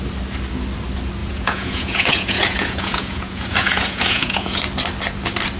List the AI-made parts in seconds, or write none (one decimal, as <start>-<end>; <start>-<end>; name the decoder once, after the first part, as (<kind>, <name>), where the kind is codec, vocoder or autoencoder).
1.2-4.6 (vocoder, Vocos)